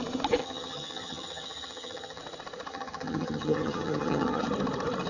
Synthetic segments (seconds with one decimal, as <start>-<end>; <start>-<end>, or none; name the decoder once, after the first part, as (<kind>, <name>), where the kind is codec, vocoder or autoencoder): 0.4-2.2 (vocoder, HiFi-GAN); 2.7-4.4